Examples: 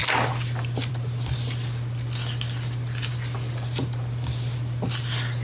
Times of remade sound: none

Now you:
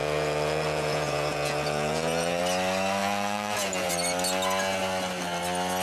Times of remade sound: 0.0-2.4; 3.0-3.9

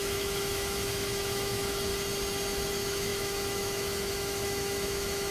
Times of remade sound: 0.0-1.9; 2.7-5.3

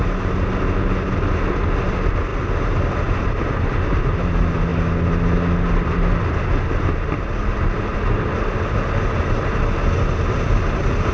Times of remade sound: none

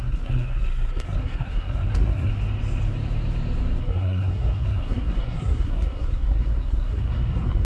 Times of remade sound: 0.0-2.3; 3.8-7.6

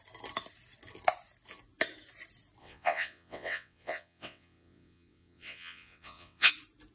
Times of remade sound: 2.6-6.5

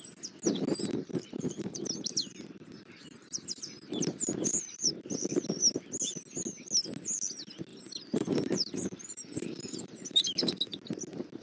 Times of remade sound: 0.7-4.9; 7.7-10.2

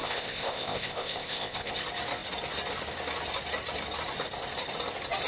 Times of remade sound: 0.0-1.7